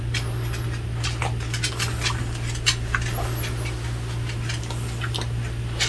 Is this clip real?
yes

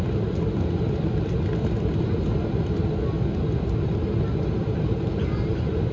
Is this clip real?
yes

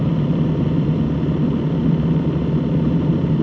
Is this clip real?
yes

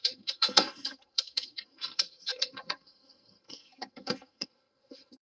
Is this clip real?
no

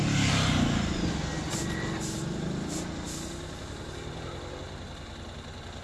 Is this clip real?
yes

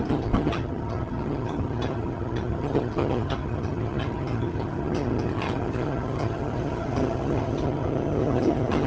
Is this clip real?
no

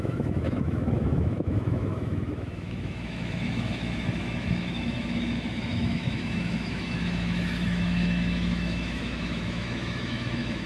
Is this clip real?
no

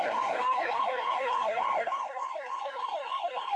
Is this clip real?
no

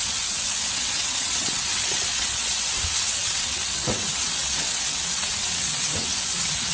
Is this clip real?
no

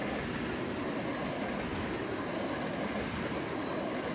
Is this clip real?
yes